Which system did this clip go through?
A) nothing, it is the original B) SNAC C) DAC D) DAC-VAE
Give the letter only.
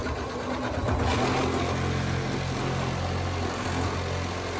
A